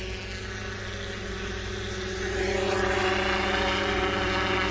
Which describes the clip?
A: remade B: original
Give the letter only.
B